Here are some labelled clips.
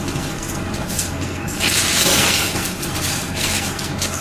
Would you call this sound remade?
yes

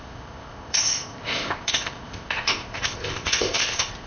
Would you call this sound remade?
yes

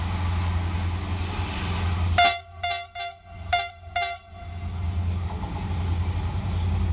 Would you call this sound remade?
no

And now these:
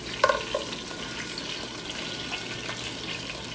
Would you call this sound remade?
no